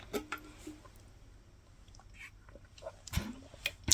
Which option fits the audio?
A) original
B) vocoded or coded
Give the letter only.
A